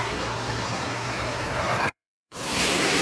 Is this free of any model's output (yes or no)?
no